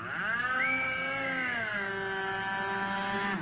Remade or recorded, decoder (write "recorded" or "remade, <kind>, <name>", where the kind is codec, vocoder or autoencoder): recorded